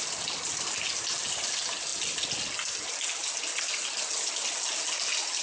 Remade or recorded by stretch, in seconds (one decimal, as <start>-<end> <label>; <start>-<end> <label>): 0.0-5.4 recorded

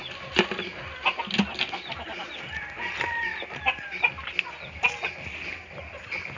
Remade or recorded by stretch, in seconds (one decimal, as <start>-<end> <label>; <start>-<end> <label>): 0.0-6.4 recorded

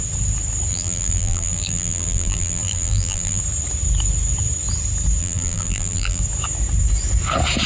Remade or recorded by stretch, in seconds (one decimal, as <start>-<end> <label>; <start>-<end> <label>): 0.0-0.7 recorded; 0.7-3.4 remade; 3.4-5.2 recorded; 5.2-6.2 remade; 6.2-7.7 recorded

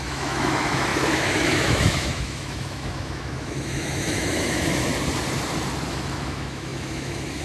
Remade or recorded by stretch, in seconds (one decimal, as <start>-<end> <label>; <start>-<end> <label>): 0.0-4.9 remade; 4.9-5.9 recorded; 5.9-7.4 remade